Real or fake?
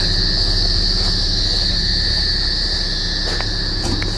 real